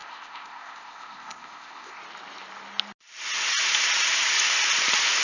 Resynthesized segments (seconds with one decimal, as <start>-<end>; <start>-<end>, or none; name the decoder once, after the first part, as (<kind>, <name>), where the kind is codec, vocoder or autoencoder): 0.0-2.0 (codec, ZipCodec)